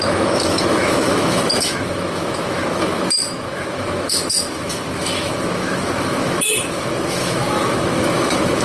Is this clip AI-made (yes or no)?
yes